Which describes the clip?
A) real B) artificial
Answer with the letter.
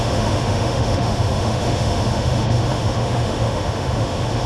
B